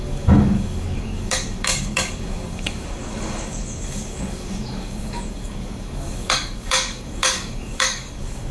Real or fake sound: fake